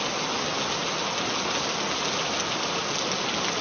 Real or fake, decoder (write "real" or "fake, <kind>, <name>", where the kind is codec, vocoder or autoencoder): real